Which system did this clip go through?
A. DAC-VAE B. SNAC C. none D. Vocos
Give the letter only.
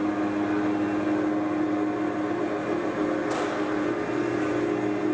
C